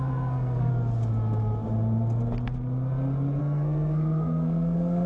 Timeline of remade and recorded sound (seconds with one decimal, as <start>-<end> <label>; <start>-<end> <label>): 0.0-0.7 remade; 0.7-3.4 recorded; 3.4-5.1 remade